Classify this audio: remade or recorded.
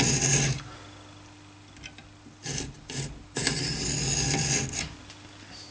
recorded